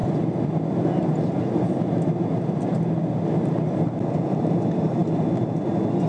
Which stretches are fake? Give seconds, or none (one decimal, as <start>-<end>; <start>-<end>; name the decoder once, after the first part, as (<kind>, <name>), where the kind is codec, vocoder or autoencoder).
none